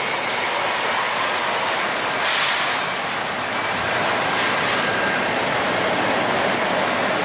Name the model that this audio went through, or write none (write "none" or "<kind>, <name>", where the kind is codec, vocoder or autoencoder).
none